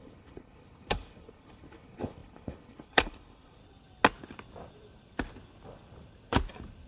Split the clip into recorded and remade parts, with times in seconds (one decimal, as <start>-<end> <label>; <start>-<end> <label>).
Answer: 0.0-3.6 remade; 3.6-6.9 recorded